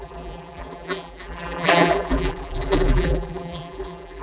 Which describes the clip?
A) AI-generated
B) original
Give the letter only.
A